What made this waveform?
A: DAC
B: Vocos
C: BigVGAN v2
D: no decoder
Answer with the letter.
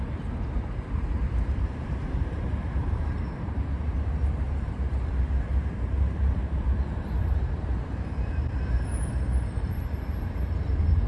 C